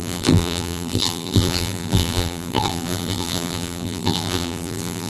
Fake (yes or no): yes